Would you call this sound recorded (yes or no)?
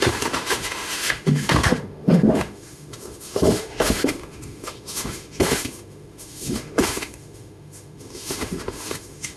no